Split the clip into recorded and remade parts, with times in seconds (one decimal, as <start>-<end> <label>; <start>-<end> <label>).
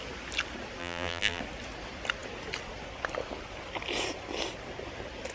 0.0-0.8 recorded; 0.8-1.4 remade; 1.4-5.3 recorded